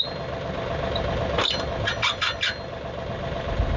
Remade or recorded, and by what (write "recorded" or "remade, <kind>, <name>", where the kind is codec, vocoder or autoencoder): recorded